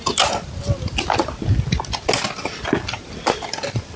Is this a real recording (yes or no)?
yes